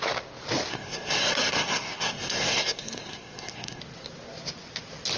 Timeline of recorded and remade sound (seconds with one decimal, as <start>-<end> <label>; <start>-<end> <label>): 0.0-0.7 recorded; 0.7-3.8 remade; 3.8-5.2 recorded